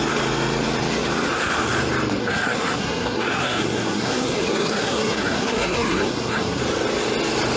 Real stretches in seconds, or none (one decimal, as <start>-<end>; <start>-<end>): 0.0-2.2; 6.6-7.6